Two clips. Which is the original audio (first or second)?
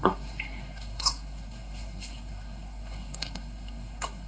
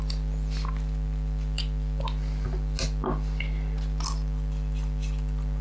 second